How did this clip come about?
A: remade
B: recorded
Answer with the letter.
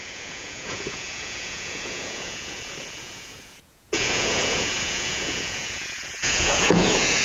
A